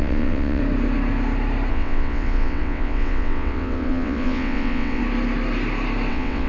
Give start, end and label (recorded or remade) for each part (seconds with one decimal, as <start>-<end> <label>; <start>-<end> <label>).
0.0-0.6 remade; 0.6-1.7 recorded; 1.7-5.0 remade; 5.0-6.1 recorded; 6.1-6.5 remade

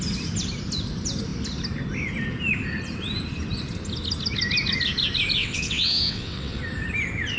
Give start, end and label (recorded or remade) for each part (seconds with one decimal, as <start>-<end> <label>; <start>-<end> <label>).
0.0-5.4 recorded; 5.4-6.6 remade; 6.6-7.4 recorded